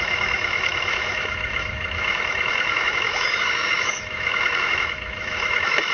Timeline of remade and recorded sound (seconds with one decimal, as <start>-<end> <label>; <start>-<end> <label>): 0.0-5.9 remade